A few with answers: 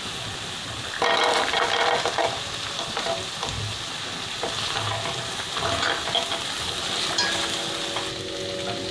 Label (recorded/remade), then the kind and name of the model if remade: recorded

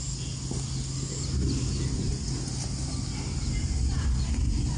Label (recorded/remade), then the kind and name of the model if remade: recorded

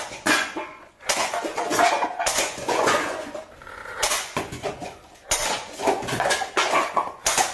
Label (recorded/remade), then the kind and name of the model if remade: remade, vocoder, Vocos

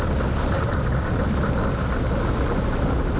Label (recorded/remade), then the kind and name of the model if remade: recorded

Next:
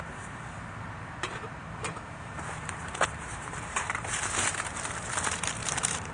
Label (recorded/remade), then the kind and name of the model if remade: remade, vocoder, BigVGAN v2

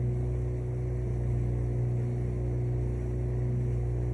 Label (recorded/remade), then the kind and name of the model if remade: recorded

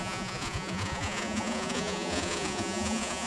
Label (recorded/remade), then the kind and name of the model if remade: remade, vocoder, Vocos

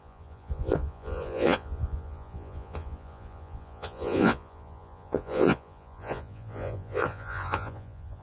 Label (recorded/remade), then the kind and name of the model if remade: remade, vocoder, Vocos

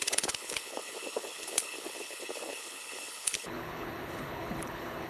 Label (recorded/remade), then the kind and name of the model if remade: remade, codec, HILCodec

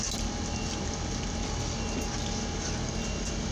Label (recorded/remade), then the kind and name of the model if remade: recorded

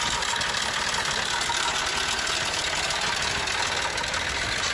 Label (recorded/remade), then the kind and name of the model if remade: recorded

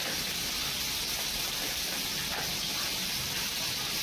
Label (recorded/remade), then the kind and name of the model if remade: recorded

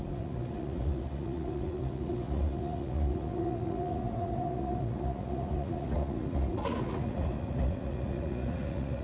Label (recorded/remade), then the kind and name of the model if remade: remade, vocoder, Vocos